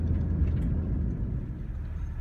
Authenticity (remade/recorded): recorded